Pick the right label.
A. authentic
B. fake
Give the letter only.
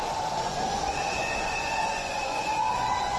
B